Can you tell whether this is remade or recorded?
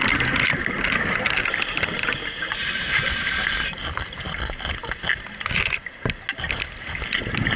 recorded